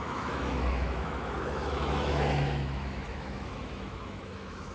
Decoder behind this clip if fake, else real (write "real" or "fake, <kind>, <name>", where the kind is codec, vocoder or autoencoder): fake, autoencoder, DAC-VAE